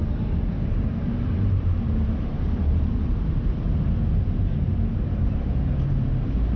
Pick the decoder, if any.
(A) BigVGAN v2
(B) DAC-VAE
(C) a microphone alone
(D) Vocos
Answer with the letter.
A